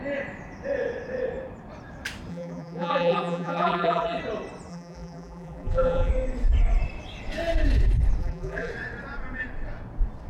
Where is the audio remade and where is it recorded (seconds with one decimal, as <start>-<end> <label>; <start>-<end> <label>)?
0.0-2.3 recorded; 2.3-4.2 remade; 4.2-4.7 recorded; 4.7-6.1 remade; 6.1-8.2 recorded; 8.2-8.7 remade; 8.7-10.3 recorded